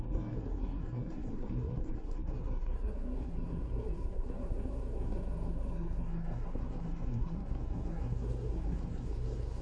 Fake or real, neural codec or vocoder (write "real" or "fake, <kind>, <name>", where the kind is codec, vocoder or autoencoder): fake, codec, SNAC